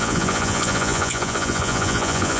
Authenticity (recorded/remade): remade